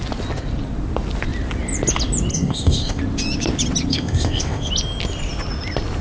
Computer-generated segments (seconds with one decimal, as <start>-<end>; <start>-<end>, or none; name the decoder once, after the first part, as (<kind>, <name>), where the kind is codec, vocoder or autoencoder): 2.3-3.0 (codec, ZipCodec); 3.9-4.7